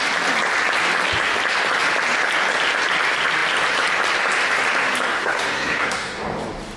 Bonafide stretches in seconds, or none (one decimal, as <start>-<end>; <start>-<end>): 0.0-5.1; 6.2-6.8